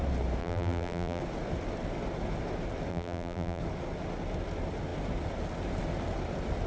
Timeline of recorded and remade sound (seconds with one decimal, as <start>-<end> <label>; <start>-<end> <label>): 0.0-0.4 recorded; 0.4-1.2 remade; 1.2-2.9 recorded; 2.9-3.6 remade; 3.6-6.7 recorded